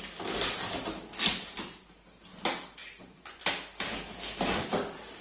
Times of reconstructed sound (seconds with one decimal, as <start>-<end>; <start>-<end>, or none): 2.8-3.4